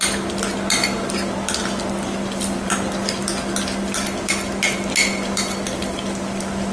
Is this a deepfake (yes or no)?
no